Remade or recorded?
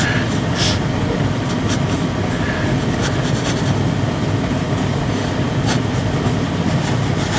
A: recorded